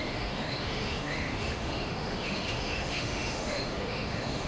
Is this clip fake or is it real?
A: fake